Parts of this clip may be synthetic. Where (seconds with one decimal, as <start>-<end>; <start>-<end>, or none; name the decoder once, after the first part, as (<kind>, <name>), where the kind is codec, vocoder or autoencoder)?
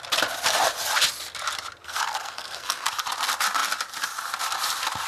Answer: 1.8-2.9 (codec, SNAC)